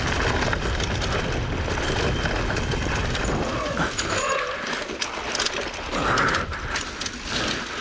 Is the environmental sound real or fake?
real